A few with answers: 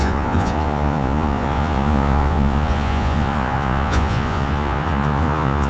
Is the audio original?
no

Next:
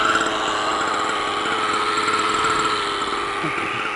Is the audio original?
yes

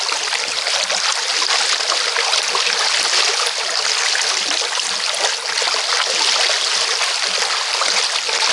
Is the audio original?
yes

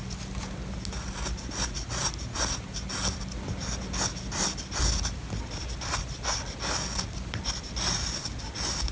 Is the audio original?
yes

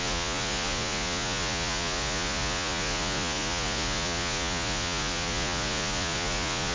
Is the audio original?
no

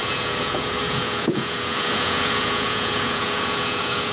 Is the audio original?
no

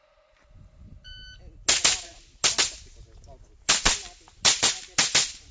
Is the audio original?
yes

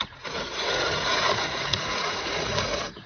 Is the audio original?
no